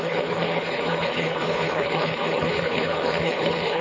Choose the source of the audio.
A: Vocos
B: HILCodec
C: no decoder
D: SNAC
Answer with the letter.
B